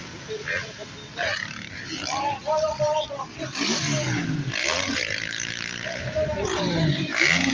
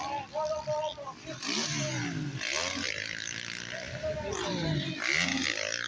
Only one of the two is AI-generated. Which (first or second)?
first